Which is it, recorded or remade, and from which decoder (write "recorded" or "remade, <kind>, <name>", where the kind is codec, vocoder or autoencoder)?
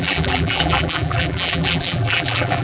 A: remade, vocoder, BigVGAN v2